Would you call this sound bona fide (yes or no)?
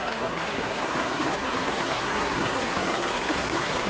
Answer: no